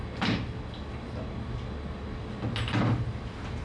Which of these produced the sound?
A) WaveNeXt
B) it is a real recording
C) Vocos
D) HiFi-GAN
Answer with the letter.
B